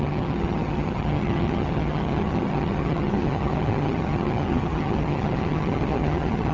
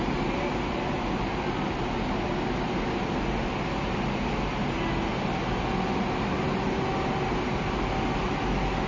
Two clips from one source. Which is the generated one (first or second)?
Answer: first